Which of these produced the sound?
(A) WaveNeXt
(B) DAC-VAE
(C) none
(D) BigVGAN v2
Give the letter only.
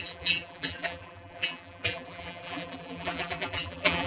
D